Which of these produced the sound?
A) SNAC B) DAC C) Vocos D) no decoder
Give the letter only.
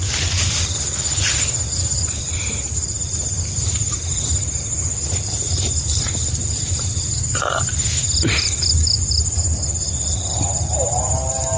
D